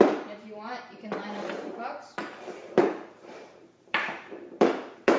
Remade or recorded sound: remade